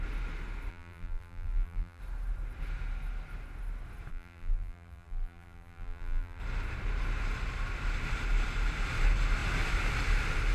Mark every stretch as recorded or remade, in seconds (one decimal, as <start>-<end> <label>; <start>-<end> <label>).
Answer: 0.0-0.7 recorded; 0.7-2.0 remade; 2.0-4.1 recorded; 4.1-6.4 remade; 6.4-10.5 recorded